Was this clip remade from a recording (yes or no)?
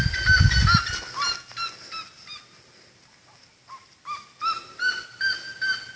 no